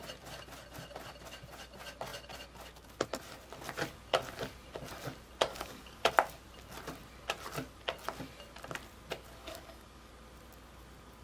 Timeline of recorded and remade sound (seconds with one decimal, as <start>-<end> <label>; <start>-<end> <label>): 0.0-5.5 recorded; 5.5-6.1 remade; 6.1-9.4 recorded; 9.4-10.1 remade; 10.1-11.2 recorded